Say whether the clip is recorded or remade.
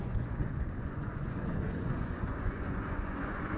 remade